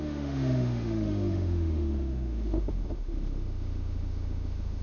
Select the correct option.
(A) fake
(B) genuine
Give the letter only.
A